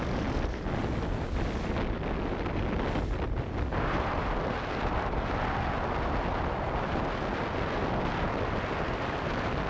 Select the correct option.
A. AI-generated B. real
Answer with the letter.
B